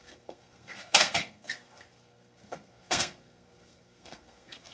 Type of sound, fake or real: fake